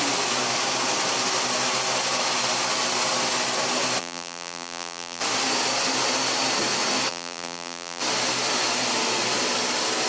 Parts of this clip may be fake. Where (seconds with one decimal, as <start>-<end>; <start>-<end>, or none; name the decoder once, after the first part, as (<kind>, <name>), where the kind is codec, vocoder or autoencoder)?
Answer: 4.0-5.2 (vocoder, BigVGAN v2); 7.1-8.0